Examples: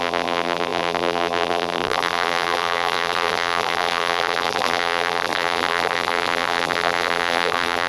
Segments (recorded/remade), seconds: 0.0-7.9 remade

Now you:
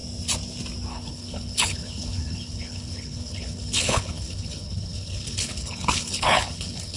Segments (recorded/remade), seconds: 0.0-0.9 recorded; 0.9-7.0 remade